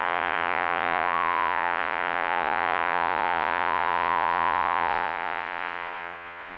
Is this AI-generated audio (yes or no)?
yes